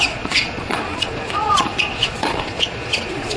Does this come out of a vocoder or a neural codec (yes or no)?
yes